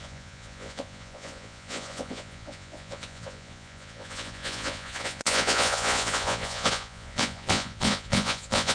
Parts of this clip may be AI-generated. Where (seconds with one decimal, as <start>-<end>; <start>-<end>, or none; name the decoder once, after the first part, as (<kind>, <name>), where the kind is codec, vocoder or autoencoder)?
0.0-8.7 (vocoder, Vocos)